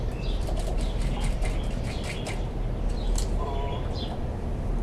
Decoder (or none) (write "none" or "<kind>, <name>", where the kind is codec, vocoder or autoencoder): none